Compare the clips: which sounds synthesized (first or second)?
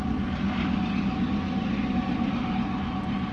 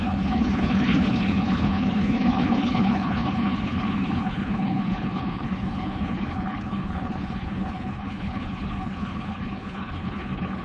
second